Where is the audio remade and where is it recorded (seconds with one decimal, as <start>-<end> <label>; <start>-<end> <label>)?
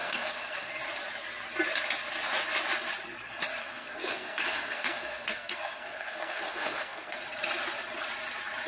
0.0-0.7 remade; 0.7-3.6 recorded; 3.6-7.2 remade; 7.2-8.7 recorded